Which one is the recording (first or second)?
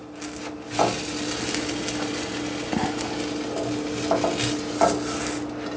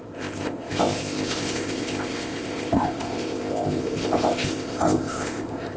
first